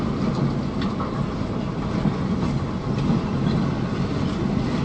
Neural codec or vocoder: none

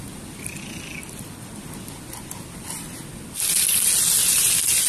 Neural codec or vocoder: none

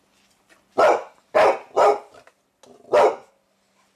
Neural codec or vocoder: none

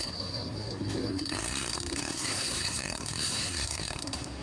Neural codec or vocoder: codec, SNAC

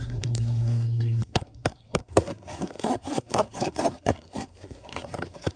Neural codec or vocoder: codec, SNAC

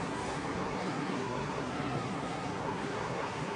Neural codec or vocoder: codec, SNAC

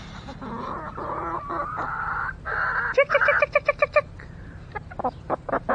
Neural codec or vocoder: none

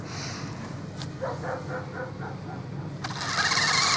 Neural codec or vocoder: none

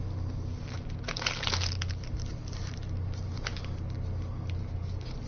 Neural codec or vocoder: none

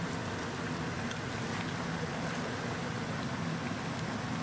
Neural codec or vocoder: none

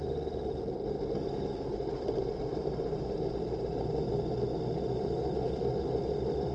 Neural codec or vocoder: none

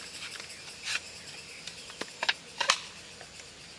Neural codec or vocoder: none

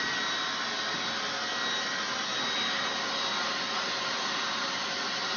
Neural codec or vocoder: none